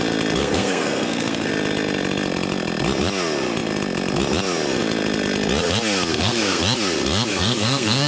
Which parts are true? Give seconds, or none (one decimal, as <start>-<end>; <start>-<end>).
0.0-0.4; 1.5-6.1; 6.6-7.3